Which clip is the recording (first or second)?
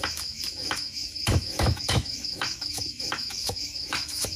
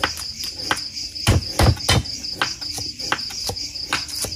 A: second